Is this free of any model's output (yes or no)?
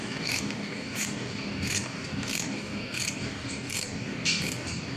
no